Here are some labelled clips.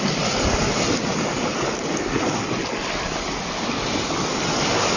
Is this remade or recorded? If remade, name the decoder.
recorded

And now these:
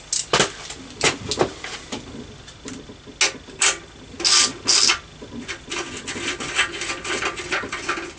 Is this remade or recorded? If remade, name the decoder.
recorded